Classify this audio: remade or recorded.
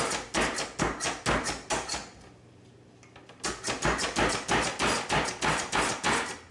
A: recorded